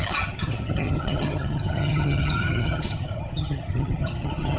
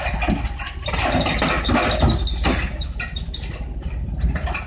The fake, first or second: first